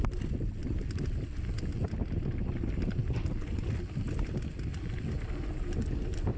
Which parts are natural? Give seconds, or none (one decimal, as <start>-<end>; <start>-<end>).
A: 0.0-6.4